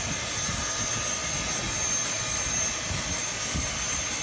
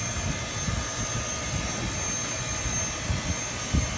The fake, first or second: first